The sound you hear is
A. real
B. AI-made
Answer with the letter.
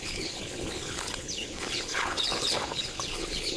B